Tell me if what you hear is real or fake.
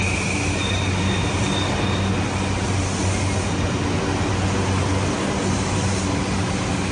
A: real